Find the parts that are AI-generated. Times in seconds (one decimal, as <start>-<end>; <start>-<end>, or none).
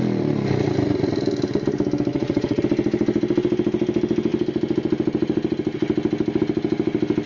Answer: 2.1-2.6